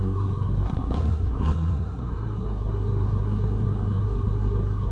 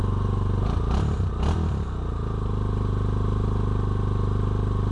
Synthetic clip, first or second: first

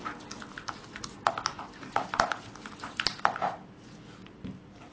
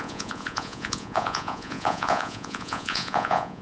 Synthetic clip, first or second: second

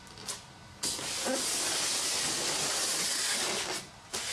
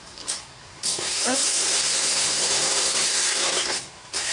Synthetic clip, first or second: second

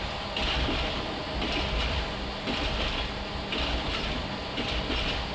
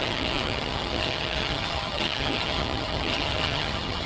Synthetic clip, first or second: second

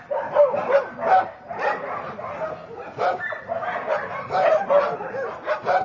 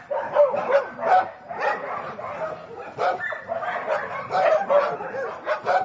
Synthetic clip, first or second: second